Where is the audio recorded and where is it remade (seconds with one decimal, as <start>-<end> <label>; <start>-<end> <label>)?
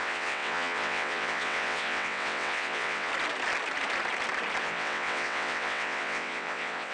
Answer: 0.0-3.1 remade; 3.1-4.6 recorded; 4.6-6.9 remade